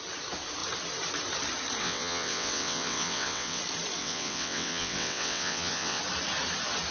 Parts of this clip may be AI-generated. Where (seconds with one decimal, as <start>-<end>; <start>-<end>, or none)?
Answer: 1.8-3.6; 4.0-6.0